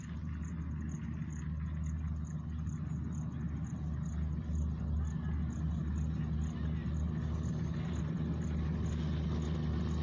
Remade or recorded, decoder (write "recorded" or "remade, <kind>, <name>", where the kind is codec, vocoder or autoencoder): recorded